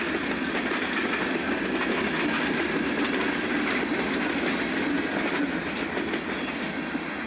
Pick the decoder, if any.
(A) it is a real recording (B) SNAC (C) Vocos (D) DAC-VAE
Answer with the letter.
A